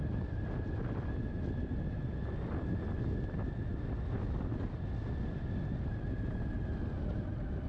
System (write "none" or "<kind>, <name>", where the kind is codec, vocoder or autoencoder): none